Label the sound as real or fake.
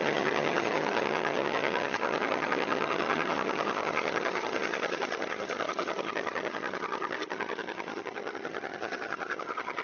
fake